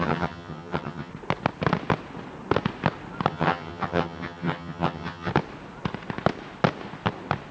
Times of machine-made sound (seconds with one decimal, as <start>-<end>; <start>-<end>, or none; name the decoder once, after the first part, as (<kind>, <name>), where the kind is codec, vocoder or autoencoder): 0.0-1.1 (vocoder, HiFi-GAN); 3.3-5.3